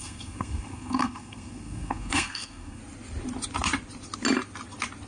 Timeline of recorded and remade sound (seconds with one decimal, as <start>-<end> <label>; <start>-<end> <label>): 0.0-2.8 remade; 2.8-5.1 recorded